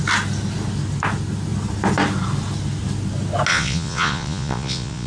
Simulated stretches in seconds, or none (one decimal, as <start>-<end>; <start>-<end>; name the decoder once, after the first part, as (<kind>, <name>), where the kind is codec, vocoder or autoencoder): 3.5-5.1 (vocoder, Vocos)